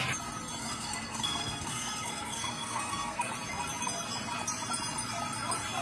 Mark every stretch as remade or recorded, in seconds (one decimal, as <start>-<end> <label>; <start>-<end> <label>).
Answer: 0.0-0.6 recorded; 0.6-3.3 remade; 3.3-5.8 recorded